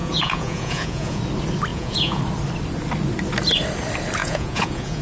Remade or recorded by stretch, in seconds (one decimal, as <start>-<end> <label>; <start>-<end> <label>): 0.0-1.2 remade; 1.2-1.7 recorded; 1.7-2.2 remade; 2.2-4.2 recorded; 4.2-5.0 remade